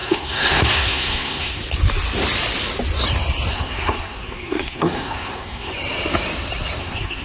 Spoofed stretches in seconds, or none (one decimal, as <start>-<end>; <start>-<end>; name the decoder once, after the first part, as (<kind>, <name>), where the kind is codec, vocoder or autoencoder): 0.0-1.6 (codec, SNAC); 3.5-5.7; 6.8-7.2